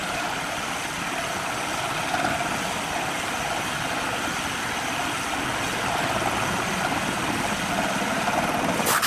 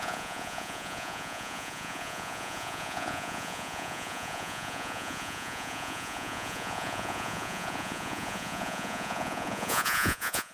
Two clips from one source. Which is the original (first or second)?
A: first